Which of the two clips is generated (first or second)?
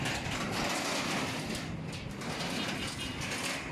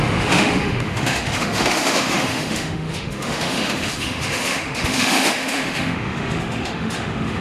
second